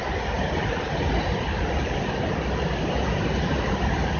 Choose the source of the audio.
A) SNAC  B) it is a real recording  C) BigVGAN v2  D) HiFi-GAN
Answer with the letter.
B